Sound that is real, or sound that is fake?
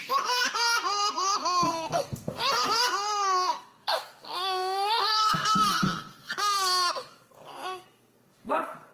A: fake